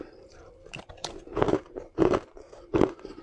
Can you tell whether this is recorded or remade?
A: remade